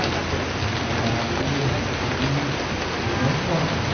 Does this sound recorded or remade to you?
recorded